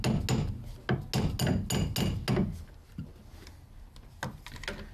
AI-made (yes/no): no